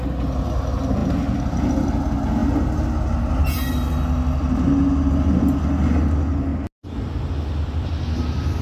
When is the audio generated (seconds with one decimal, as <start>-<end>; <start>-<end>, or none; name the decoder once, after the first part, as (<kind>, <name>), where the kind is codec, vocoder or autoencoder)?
none